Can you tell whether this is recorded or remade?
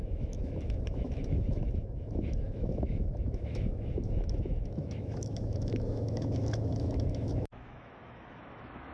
remade